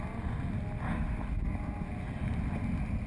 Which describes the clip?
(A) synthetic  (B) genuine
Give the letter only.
B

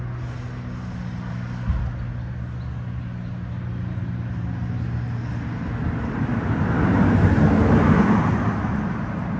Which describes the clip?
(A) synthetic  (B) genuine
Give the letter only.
B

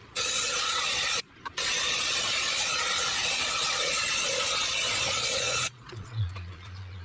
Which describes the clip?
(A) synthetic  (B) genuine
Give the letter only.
A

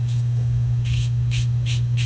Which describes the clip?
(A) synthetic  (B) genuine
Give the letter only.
A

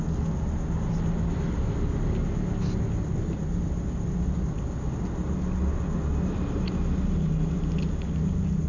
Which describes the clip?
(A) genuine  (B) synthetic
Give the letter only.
A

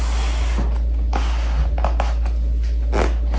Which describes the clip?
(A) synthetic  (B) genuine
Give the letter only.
B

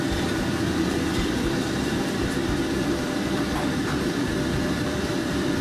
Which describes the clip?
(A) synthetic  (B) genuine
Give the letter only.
A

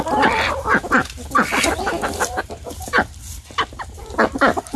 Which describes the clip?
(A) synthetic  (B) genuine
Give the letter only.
B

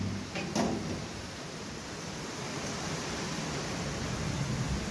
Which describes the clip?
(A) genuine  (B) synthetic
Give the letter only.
B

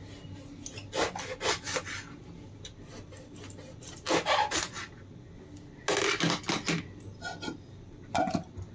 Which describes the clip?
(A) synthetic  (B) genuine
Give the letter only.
B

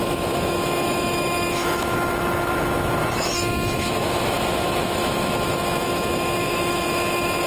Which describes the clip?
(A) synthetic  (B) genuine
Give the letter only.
A